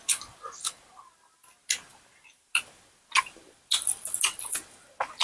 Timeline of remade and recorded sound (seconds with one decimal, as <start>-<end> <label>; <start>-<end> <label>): 0.0-5.2 recorded